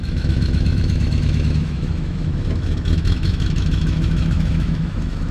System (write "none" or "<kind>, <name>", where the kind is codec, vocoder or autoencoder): autoencoder, DAC-VAE